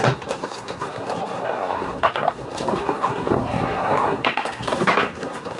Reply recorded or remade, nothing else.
remade